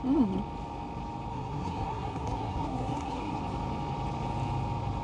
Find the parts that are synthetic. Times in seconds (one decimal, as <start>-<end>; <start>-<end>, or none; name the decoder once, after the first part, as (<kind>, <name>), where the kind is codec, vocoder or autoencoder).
1.3-3.4 (codec, SNAC)